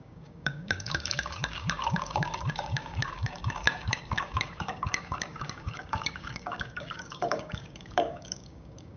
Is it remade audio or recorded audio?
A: remade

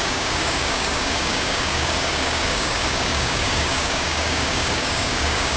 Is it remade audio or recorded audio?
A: remade